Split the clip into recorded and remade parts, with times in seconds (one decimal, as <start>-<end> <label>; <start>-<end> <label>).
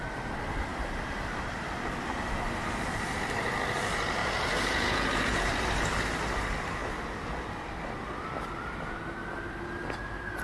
0.0-4.2 recorded; 4.2-5.5 remade; 5.5-10.4 recorded